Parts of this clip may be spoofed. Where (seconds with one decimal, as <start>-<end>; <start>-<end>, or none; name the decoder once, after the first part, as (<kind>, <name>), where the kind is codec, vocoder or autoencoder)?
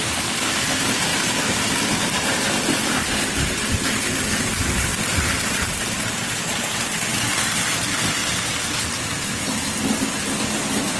4.9-6.6 (vocoder, BigVGAN v2)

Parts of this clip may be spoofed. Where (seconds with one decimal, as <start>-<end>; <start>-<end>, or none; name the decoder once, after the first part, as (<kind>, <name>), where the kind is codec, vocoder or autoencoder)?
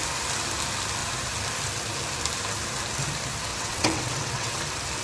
3.5-4.6 (vocoder, WaveNeXt)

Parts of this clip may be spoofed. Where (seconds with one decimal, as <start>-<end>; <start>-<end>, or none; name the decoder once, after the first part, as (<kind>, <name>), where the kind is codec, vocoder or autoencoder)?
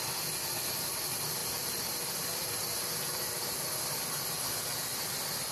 1.4-3.6 (vocoder, BigVGAN v2)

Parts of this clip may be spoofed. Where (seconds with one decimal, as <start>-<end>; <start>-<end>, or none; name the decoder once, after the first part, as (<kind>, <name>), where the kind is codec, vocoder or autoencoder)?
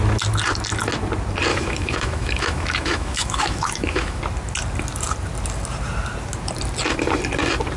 1.5-4.2 (autoencoder, DAC-VAE)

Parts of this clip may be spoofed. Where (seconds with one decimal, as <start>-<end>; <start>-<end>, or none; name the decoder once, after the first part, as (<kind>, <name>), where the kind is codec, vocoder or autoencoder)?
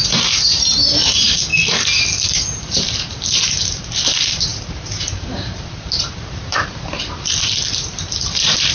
0.0-1.5 (vocoder, BigVGAN v2); 2.3-8.7